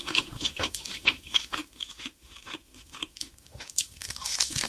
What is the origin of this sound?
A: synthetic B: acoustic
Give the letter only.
A